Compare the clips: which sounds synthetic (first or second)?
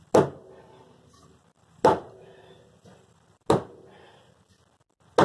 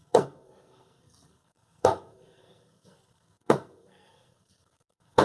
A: second